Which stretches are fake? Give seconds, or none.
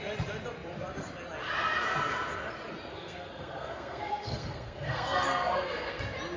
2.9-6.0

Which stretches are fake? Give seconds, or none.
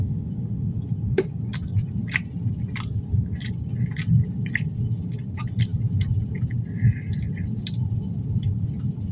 none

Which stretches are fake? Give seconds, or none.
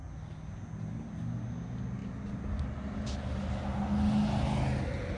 none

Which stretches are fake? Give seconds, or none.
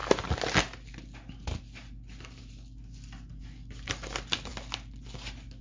none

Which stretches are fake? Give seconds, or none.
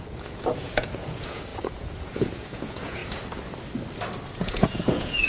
0.0-3.0; 4.3-5.3